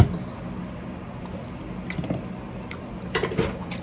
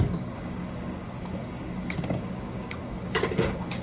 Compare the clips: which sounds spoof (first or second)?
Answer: second